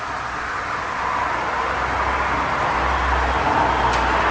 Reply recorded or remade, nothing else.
recorded